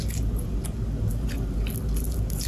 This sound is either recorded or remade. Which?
recorded